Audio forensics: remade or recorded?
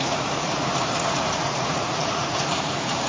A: remade